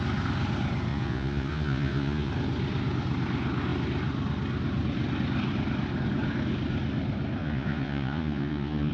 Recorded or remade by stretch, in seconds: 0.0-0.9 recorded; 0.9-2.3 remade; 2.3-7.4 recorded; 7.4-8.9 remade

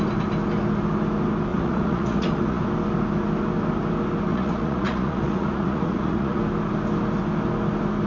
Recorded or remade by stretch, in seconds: 0.0-1.5 recorded; 1.5-2.6 remade; 2.6-4.3 recorded; 4.3-6.4 remade; 6.4-8.1 recorded

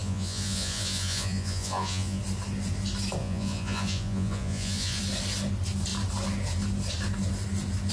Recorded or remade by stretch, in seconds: 0.0-2.2 remade; 2.2-3.2 recorded; 3.2-5.0 remade; 5.0-7.9 recorded